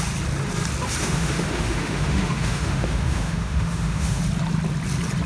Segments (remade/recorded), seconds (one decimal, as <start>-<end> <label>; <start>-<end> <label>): 0.0-1.0 recorded; 1.0-4.2 remade; 4.2-5.3 recorded